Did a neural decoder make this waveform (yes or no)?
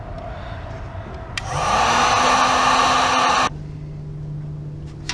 no